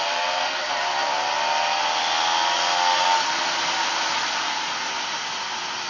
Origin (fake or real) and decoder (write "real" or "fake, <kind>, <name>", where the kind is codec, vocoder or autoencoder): real